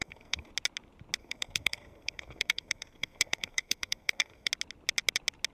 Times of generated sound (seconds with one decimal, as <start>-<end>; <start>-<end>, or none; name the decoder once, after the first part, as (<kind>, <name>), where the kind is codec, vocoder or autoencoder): 0.0-0.5 (codec, SNAC); 1.2-4.5